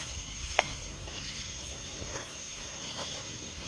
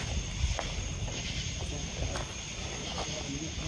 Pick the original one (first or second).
second